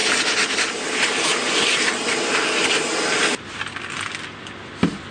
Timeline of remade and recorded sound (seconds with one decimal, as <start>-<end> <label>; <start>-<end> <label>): 0.0-5.1 recorded